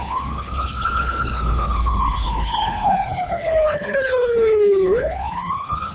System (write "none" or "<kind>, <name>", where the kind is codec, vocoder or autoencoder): codec, HILCodec